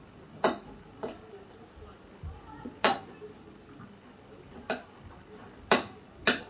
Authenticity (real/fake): real